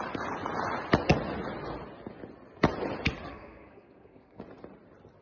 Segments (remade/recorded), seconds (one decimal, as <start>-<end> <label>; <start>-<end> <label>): 0.0-3.3 recorded; 3.3-4.4 remade; 4.4-5.2 recorded